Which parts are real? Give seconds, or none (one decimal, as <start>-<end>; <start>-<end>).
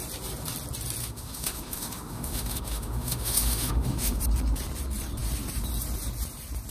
0.0-1.0; 4.2-6.7